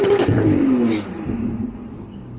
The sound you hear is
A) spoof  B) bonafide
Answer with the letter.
B